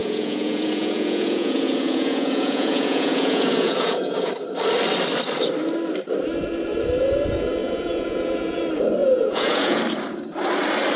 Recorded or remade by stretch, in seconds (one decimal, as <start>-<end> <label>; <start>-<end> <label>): 0.0-4.3 remade; 4.3-7.6 recorded; 7.6-8.6 remade; 8.6-9.0 recorded; 9.0-9.8 remade; 9.8-11.0 recorded